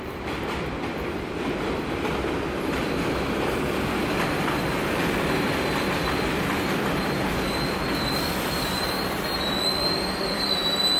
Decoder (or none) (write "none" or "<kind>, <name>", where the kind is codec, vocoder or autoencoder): vocoder, BigVGAN v2